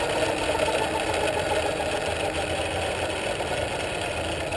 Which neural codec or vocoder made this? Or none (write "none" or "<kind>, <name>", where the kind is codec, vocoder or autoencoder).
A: none